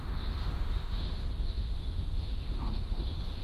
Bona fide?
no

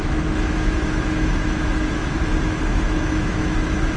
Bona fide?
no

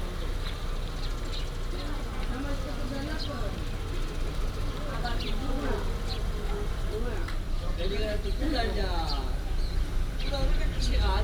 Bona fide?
yes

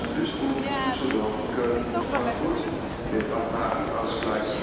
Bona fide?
yes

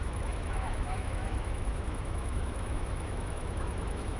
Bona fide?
no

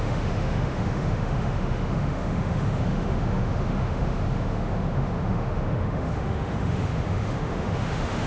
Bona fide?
no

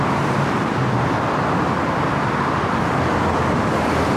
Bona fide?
yes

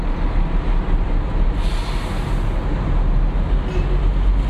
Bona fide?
yes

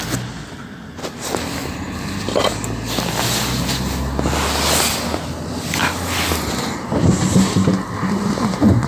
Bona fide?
yes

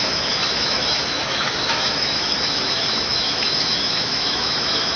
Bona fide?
no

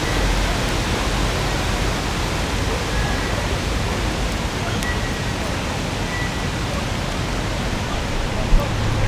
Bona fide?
yes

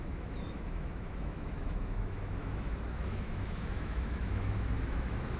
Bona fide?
no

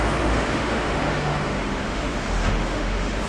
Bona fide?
no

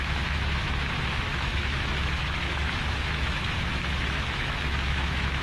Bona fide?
no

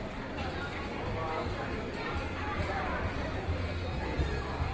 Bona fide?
yes